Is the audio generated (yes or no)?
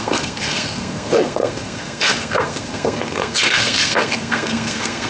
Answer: yes